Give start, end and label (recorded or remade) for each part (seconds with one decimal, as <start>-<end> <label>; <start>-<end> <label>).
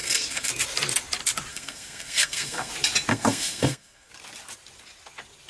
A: 0.0-0.5 remade; 0.5-1.5 recorded; 1.5-2.7 remade; 2.7-3.1 recorded; 3.1-4.1 remade; 4.1-5.5 recorded